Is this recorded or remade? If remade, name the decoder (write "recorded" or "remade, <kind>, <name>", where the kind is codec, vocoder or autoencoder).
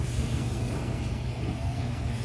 remade, codec, SNAC